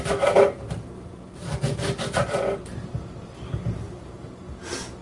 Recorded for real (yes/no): yes